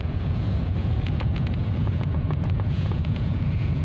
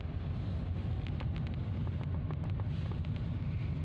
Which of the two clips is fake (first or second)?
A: first